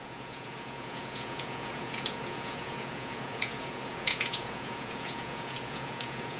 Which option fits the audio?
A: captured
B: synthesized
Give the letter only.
B